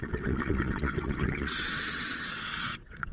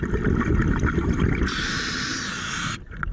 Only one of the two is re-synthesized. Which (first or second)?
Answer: first